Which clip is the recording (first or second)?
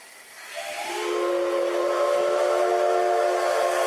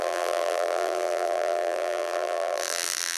first